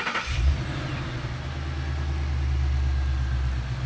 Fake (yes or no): no